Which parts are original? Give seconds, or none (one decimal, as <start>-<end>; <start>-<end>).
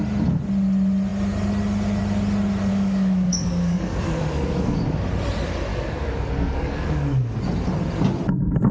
0.0-2.7; 5.0-5.7; 7.4-8.7